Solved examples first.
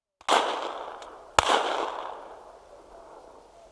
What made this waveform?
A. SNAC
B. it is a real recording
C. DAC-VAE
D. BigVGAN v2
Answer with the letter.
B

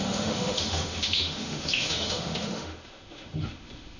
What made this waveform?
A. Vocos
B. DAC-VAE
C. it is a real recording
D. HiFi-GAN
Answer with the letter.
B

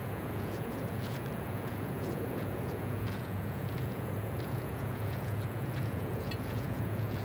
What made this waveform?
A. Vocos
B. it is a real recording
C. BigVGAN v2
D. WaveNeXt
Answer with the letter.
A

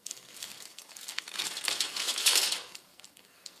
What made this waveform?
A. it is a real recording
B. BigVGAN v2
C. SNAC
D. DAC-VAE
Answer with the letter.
C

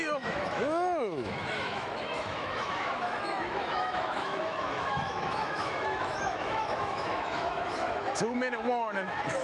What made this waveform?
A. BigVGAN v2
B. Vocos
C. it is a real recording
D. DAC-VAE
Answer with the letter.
D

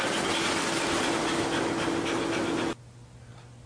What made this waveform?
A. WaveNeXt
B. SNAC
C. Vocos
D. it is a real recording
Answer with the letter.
D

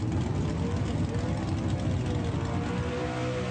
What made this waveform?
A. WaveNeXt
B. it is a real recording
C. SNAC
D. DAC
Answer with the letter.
B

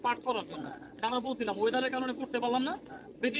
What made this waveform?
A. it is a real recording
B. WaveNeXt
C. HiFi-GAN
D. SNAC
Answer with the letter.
B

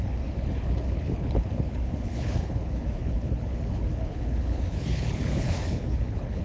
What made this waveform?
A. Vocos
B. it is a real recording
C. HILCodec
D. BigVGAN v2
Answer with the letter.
C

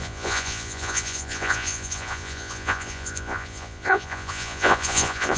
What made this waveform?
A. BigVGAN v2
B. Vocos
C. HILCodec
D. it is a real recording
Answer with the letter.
B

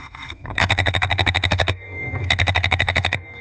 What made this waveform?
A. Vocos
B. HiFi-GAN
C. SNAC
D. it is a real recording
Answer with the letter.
C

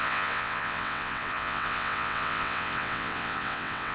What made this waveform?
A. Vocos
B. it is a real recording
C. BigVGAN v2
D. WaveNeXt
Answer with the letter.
D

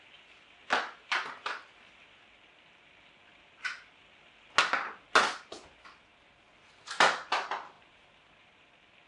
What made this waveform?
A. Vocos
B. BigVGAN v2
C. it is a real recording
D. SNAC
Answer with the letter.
C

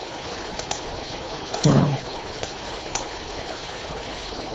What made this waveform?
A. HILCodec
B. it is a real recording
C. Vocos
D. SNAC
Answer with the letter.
A